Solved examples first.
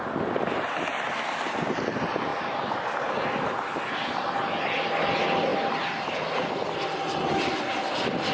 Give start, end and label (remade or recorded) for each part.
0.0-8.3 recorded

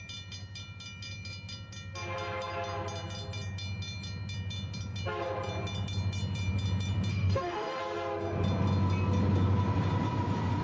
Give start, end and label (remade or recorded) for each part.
0.0-7.1 recorded; 7.1-7.8 remade; 7.8-10.6 recorded

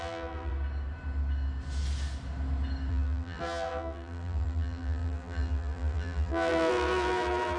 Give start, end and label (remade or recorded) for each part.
0.0-0.5 remade; 0.5-2.9 recorded; 2.9-7.6 remade

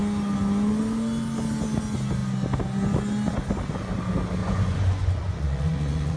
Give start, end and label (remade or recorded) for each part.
0.0-4.4 recorded; 4.4-6.2 remade

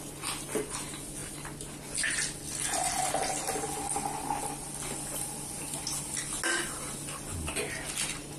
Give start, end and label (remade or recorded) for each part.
0.0-8.4 recorded